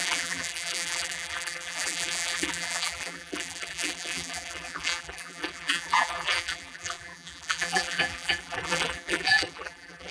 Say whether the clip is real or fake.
fake